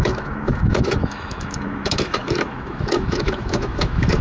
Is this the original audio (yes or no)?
no